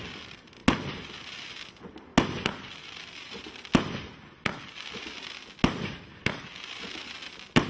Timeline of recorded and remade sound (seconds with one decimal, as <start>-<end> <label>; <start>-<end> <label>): 0.0-7.7 recorded